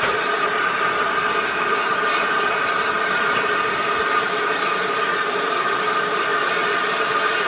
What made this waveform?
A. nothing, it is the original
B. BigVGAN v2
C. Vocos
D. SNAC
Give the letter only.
A